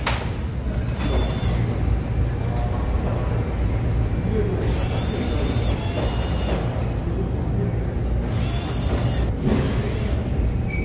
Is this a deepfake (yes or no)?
no